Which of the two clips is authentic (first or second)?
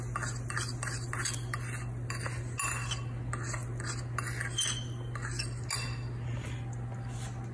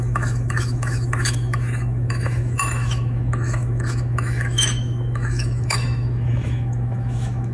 first